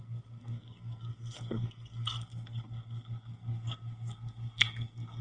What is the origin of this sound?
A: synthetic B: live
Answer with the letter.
A